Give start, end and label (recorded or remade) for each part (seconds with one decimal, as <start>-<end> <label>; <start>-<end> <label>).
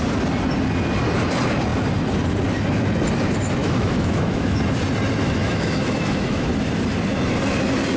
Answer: 0.0-3.6 recorded; 3.6-4.6 remade; 4.6-5.2 recorded; 5.2-6.5 remade; 6.5-8.0 recorded